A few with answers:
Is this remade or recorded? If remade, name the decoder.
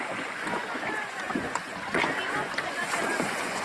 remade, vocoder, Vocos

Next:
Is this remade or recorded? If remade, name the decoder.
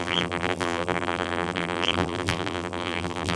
remade, vocoder, BigVGAN v2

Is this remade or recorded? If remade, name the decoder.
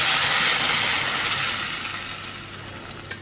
recorded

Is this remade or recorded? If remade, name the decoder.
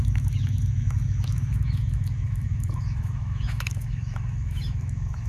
remade, autoencoder, DAC-VAE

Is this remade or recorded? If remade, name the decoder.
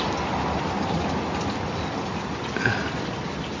recorded